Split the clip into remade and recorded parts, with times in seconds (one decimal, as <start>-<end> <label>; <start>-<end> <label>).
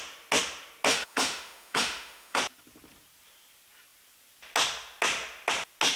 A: 0.0-0.9 recorded; 0.9-2.4 remade; 2.4-6.0 recorded